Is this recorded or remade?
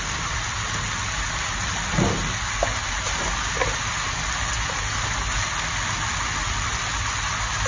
recorded